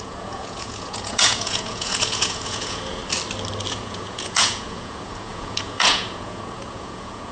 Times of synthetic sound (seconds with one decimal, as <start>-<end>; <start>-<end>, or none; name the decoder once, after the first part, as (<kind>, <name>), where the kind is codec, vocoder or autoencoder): 0.0-3.0 (vocoder, Vocos); 3.7-7.3